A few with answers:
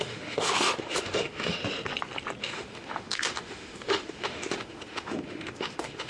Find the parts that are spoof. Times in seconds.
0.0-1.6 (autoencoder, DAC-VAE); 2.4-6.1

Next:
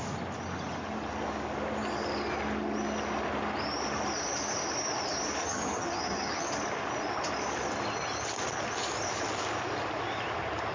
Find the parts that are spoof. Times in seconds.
5.4-6.5 (vocoder, HiFi-GAN)